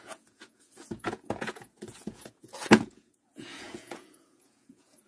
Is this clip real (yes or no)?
no